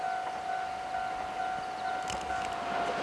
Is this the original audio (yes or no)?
yes